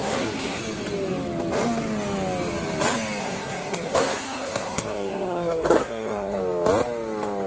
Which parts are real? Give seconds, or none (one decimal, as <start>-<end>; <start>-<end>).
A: 0.6-3.2; 6.4-7.5